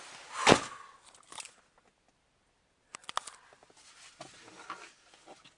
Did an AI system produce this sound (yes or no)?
no